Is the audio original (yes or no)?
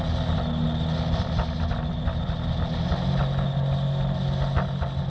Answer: yes